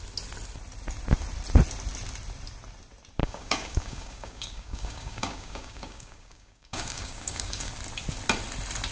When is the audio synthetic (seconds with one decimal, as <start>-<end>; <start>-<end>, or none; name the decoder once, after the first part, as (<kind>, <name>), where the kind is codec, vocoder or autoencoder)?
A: 3.2-7.7 (codec, DAC)